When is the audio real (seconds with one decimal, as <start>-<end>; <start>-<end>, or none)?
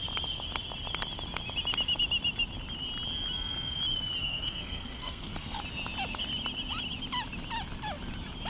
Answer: 0.0-4.2; 5.6-8.5